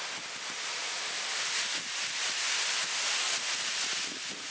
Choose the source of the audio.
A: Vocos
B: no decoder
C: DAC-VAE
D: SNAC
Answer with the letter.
B